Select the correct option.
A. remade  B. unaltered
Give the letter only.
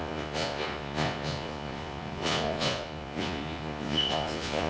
A